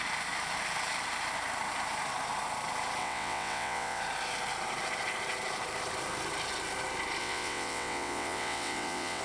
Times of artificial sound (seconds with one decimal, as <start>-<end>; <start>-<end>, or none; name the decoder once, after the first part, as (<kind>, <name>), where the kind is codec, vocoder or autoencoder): 3.0-4.0 (vocoder, WaveNeXt); 7.2-9.2